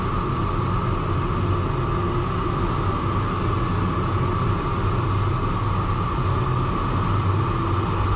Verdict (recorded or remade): recorded